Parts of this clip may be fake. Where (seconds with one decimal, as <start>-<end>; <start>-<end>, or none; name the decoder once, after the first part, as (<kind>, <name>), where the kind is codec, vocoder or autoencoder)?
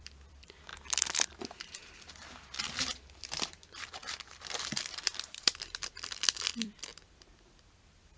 0.0-1.8 (vocoder, BigVGAN v2); 2.6-4.0; 4.7-8.2